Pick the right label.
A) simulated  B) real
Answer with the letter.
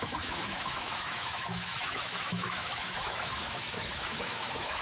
A